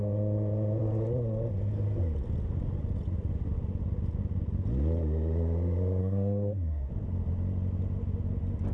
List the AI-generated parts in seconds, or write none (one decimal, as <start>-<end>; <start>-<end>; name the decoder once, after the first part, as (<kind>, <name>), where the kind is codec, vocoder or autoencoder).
6.0-6.9 (codec, SNAC)